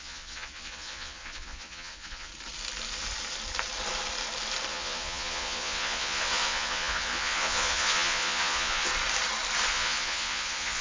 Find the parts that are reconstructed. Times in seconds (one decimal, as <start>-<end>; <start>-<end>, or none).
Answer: 0.0-2.3; 4.7-8.9; 9.7-10.8